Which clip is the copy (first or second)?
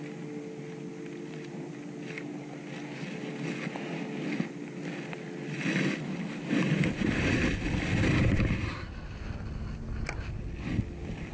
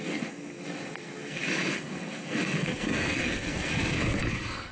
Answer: second